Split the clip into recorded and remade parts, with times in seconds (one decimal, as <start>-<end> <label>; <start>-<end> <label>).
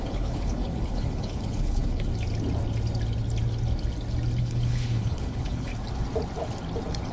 0.0-2.1 remade; 2.1-4.4 recorded; 4.4-5.7 remade; 5.7-7.1 recorded